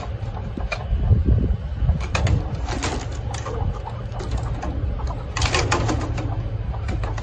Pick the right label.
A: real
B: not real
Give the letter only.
A